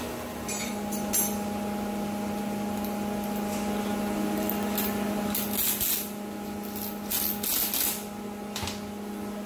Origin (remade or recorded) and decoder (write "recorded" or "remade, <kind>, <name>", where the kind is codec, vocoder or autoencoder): recorded